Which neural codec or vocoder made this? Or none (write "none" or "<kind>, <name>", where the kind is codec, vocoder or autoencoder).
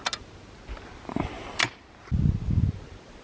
none